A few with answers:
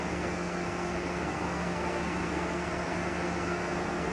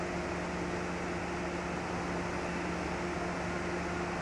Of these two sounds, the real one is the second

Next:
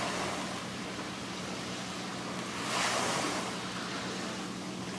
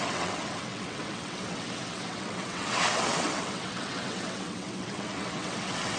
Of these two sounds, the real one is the first